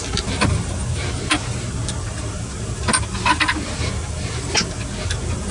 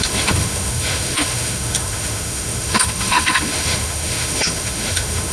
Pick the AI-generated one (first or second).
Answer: second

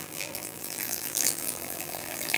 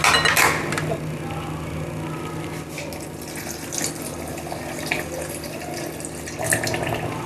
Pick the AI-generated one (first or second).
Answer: first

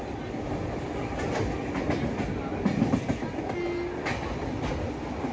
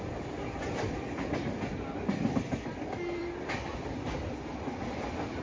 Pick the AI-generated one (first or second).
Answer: second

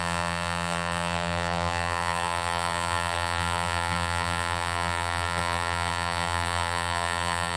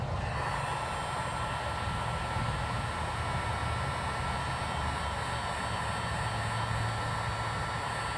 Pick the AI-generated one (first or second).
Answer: first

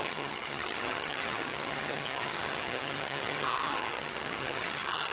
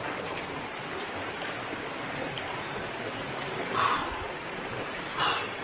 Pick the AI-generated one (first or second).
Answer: first